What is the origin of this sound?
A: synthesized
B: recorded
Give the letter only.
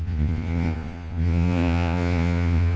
A